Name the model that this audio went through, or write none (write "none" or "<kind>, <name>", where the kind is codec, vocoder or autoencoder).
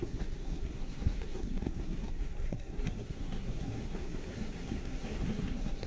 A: codec, SNAC